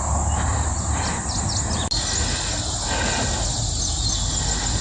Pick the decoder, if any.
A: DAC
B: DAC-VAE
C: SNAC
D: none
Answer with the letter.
D